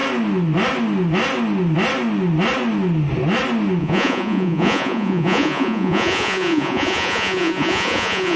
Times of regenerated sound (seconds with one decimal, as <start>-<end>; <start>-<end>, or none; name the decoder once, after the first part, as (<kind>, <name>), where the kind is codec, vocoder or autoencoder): 3.8-8.4 (vocoder, Vocos)

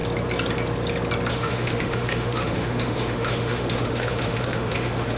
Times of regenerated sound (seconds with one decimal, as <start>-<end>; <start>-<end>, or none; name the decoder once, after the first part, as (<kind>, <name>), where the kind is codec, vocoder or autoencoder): 1.3-5.2 (autoencoder, DAC-VAE)